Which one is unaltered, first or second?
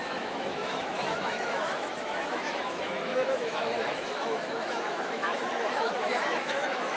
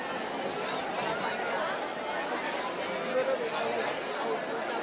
second